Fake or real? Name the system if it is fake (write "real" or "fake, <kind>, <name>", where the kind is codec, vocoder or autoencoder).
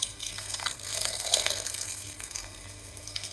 fake, codec, SNAC